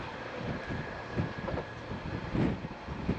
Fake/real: real